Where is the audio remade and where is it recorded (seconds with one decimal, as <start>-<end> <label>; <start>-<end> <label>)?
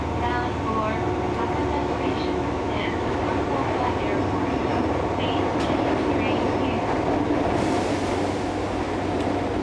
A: 0.0-1.8 recorded; 1.8-3.2 remade; 3.2-9.6 recorded